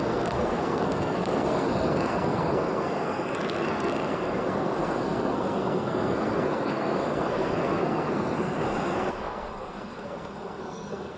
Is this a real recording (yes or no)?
no